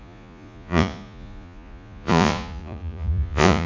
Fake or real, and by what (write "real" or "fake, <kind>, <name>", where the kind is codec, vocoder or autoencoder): fake, vocoder, Vocos